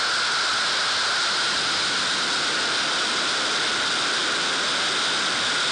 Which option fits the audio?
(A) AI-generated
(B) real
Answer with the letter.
B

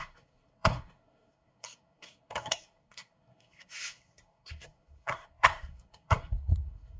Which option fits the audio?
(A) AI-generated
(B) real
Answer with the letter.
A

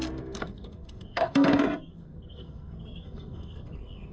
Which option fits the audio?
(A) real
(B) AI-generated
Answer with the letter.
B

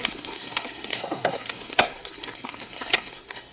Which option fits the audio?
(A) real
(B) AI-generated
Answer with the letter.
B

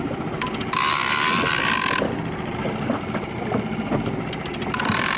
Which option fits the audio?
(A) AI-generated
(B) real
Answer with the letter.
B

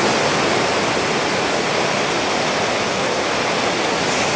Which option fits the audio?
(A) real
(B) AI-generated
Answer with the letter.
A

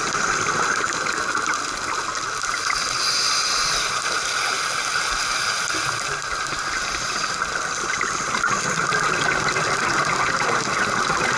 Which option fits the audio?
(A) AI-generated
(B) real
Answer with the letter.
B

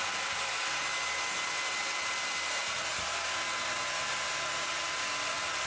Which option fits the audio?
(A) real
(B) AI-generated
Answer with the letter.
A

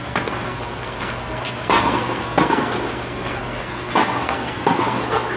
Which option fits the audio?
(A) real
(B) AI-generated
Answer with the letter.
B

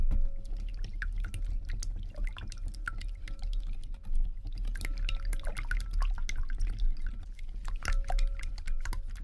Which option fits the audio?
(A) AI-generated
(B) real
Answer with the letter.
B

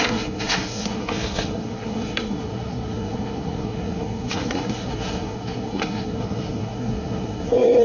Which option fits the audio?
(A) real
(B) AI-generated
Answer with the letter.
B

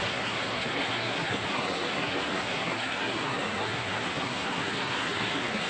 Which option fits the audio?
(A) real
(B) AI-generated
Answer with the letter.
B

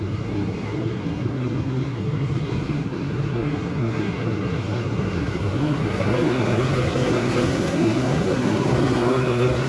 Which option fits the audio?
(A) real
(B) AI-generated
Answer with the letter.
B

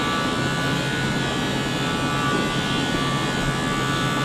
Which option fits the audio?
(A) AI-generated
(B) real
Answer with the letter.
B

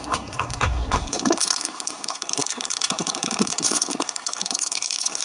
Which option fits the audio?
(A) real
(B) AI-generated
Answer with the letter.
B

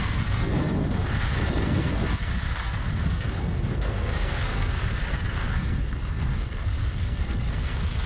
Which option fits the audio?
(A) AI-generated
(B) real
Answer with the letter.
A